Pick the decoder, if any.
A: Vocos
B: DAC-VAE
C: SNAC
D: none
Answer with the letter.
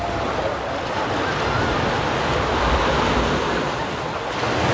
D